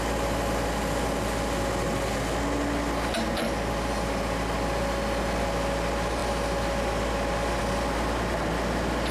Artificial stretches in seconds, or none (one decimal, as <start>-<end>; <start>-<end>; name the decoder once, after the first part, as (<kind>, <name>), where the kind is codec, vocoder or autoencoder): none